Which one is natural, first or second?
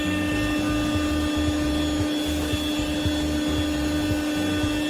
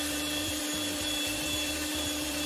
first